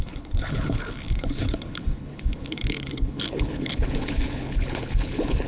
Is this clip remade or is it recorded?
remade